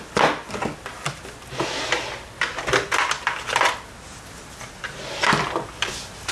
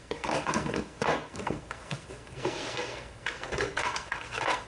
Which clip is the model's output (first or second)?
second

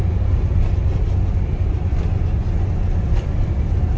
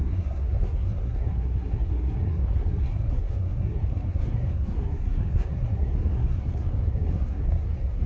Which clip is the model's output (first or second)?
second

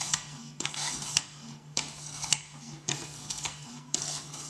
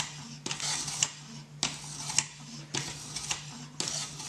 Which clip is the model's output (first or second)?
first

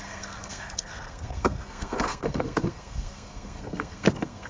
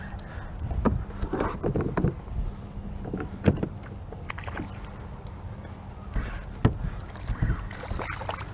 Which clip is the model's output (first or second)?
first